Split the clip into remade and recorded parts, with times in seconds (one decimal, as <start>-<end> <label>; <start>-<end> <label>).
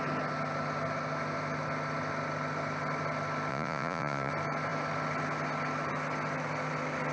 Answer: 0.0-3.5 recorded; 3.5-4.3 remade; 4.3-7.1 recorded